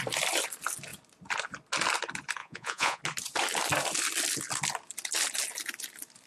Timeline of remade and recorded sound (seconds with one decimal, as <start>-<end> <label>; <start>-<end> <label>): 0.0-2.4 recorded; 2.4-3.0 remade; 3.0-6.3 recorded